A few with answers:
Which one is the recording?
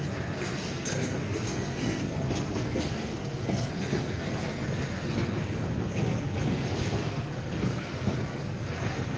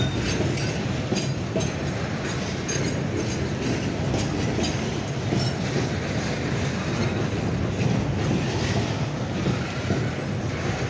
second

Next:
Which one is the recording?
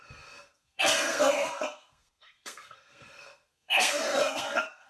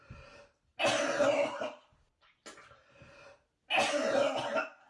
second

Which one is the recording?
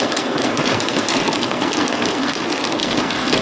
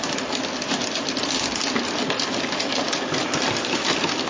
second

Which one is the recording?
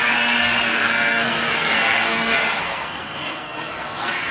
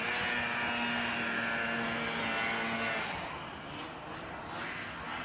second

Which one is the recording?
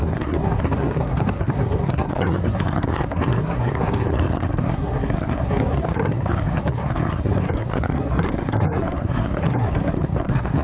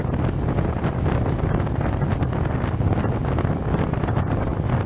second